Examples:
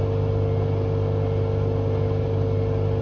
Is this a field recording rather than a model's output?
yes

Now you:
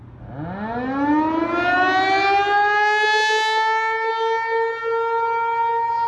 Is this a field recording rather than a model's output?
yes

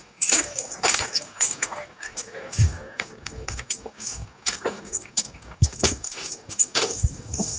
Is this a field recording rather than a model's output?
no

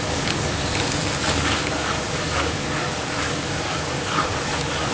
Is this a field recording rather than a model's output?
no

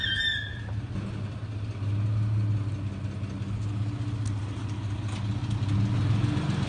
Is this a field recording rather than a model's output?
yes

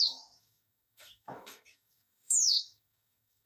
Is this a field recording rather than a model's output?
no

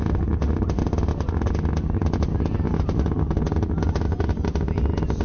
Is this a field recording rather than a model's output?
yes